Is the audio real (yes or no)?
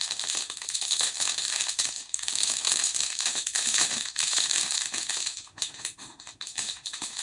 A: no